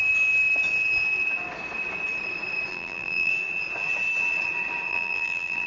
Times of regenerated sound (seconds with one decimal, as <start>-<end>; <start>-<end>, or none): 2.7-3.3; 4.9-5.7